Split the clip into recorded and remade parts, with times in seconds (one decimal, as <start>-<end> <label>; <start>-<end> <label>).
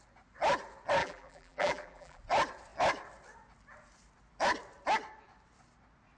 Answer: 0.0-1.0 recorded; 1.0-2.2 remade; 2.2-6.2 recorded